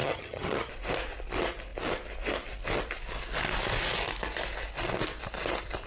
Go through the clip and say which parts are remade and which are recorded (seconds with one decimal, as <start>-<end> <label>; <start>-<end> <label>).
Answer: 0.0-0.7 remade; 0.7-5.9 recorded